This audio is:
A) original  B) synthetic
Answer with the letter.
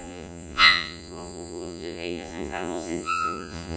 B